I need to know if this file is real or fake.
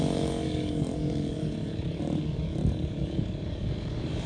fake